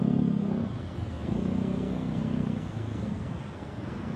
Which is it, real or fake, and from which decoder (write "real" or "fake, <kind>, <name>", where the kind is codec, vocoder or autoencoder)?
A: fake, codec, SNAC